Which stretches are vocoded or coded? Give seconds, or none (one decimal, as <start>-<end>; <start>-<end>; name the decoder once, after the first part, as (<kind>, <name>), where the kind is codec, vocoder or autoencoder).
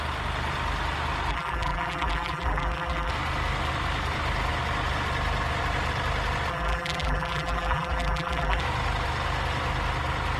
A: 1.3-3.1 (vocoder, BigVGAN v2); 6.5-8.6